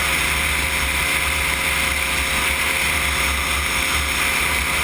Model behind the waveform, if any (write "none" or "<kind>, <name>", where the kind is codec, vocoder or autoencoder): none